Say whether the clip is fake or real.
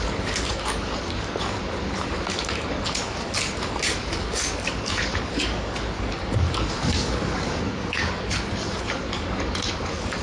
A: fake